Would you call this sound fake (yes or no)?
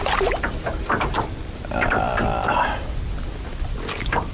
no